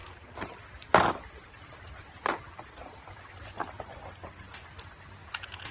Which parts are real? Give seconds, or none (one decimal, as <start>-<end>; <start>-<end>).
0.0-5.2

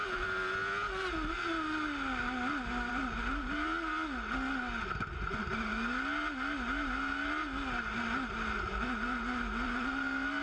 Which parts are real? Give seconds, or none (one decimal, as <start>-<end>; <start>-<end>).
0.0-10.4

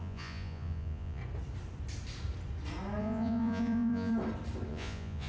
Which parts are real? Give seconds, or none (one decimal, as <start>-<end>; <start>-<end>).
1.2-3.0; 4.1-4.7

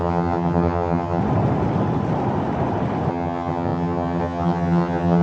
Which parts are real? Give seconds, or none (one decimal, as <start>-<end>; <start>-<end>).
1.2-3.1

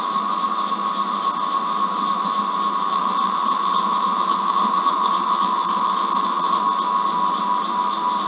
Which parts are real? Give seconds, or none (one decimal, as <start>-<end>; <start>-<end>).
0.0-2.9; 6.6-8.3

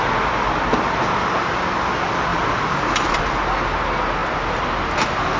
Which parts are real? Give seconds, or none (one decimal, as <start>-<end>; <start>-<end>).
0.0-2.3; 3.1-5.4

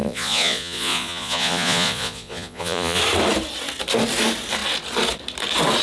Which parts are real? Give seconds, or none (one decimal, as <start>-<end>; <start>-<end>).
3.0-5.8

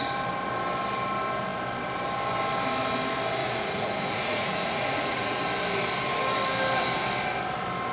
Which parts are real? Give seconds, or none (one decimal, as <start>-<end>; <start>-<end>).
0.0-3.4; 5.4-7.9